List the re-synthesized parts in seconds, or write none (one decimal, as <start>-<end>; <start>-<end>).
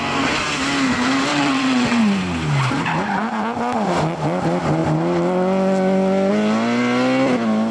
1.3-2.0